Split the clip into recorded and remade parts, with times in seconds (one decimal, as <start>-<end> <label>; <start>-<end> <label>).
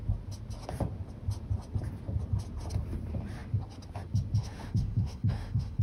0.0-4.4 recorded; 4.4-5.8 remade